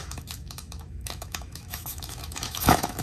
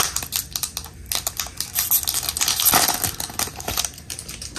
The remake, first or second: first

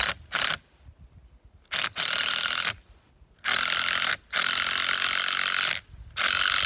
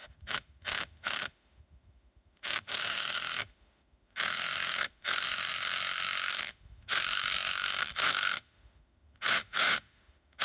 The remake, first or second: second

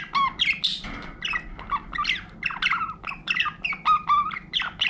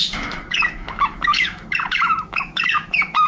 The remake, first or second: second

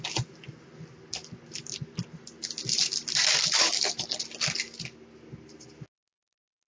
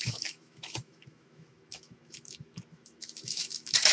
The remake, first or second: second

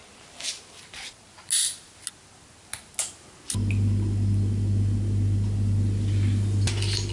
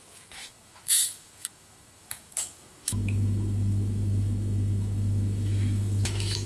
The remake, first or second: second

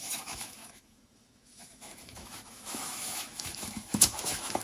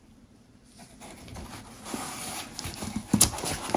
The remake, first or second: first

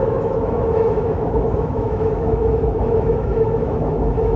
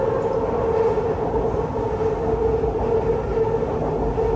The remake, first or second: first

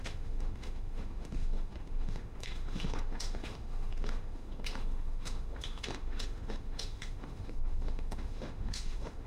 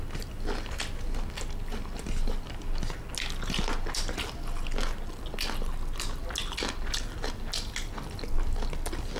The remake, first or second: first